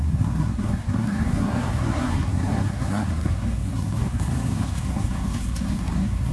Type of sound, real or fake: fake